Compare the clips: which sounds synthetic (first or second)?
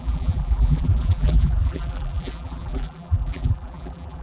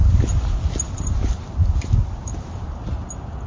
first